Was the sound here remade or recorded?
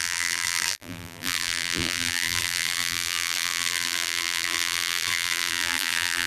remade